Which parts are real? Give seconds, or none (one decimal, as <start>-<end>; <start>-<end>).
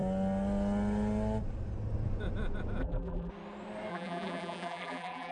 0.0-2.8; 3.3-3.9